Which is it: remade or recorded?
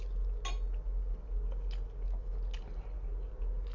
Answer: recorded